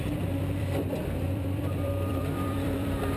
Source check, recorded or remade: remade